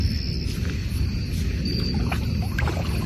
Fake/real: real